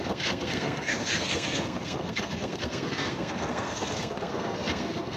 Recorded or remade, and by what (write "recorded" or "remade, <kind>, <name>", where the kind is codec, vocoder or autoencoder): remade, codec, SNAC